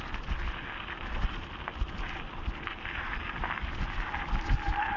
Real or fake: real